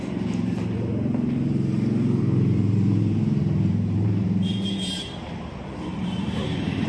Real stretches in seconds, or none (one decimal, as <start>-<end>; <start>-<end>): none